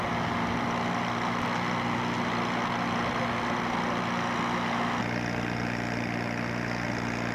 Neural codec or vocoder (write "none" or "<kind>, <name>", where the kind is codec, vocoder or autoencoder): none